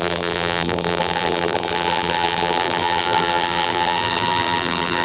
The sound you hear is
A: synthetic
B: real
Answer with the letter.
A